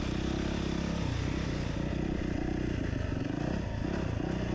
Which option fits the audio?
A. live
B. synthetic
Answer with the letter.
A